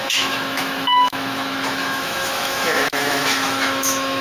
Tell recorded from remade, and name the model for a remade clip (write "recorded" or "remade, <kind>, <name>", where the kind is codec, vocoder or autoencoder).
remade, autoencoder, DAC-VAE